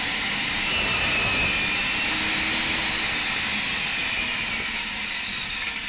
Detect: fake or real real